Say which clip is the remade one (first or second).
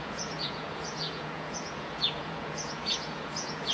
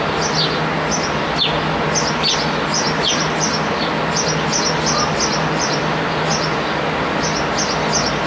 first